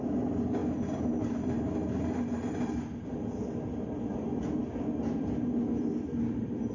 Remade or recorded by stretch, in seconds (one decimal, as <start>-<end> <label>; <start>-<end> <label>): 0.0-6.7 recorded